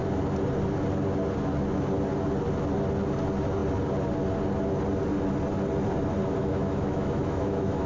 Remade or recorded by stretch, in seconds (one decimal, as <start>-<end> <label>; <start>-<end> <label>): 0.0-6.4 recorded; 6.4-7.9 remade